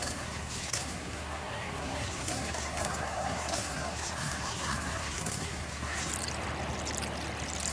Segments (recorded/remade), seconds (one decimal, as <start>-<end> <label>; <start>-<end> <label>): 0.0-6.1 remade; 6.1-7.7 recorded